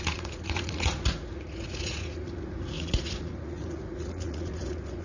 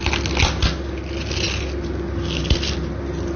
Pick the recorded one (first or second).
second